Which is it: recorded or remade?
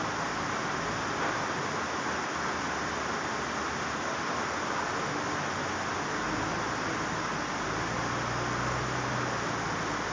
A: recorded